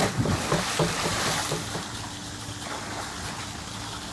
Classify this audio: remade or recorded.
recorded